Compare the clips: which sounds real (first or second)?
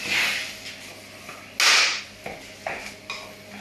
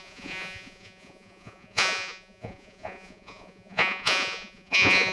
first